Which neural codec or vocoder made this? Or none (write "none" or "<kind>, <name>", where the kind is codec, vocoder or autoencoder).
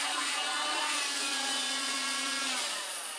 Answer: vocoder, Vocos